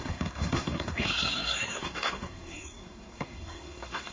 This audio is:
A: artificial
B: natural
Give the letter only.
A